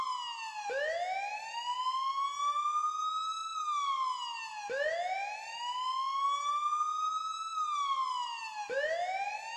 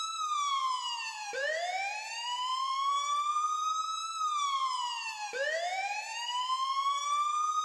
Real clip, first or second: first